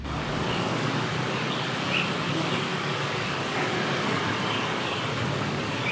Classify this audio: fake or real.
fake